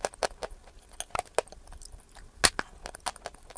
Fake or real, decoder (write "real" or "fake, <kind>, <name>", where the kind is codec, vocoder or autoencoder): real